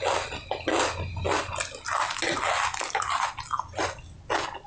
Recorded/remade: recorded